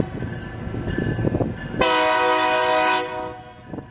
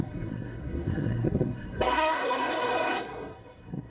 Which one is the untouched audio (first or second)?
first